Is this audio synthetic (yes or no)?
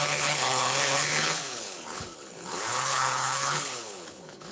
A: yes